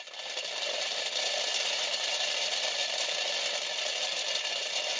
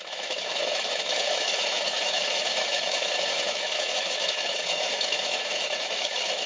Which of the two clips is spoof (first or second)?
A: second